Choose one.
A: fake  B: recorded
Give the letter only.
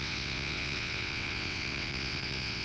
A